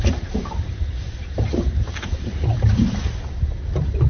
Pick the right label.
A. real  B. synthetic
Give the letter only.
B